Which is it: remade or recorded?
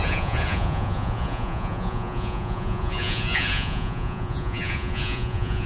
remade